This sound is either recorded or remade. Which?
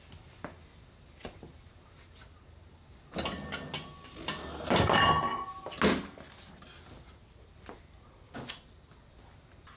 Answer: recorded